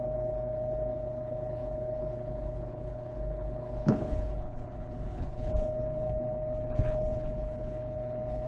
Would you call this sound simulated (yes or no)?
yes